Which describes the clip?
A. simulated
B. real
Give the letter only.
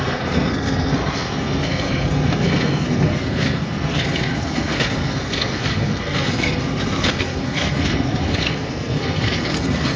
A